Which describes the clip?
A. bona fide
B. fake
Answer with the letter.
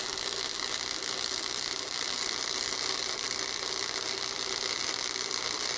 A